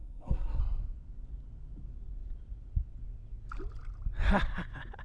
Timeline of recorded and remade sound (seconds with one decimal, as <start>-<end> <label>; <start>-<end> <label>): 0.0-0.6 remade; 0.6-5.0 recorded